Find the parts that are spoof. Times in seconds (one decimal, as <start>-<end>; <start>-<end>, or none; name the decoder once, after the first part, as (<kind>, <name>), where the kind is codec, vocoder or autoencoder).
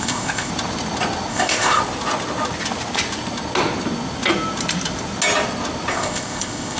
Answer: 0.0-0.5 (codec, ZipCodec); 1.3-1.8; 5.9-6.8